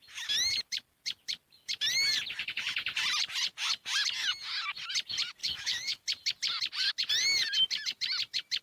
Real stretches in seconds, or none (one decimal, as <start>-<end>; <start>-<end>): 0.0-5.4; 6.0-8.6